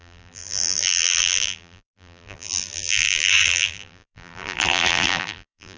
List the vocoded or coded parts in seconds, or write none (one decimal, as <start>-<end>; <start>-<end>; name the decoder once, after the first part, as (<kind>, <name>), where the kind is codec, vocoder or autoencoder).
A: 0.0-5.8 (vocoder, BigVGAN v2)